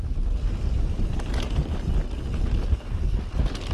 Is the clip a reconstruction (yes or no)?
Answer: no